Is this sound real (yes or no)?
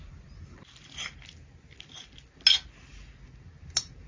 yes